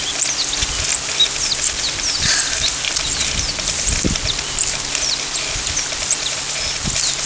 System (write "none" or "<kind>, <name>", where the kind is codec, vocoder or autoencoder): none